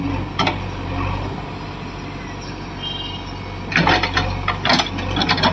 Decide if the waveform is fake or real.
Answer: real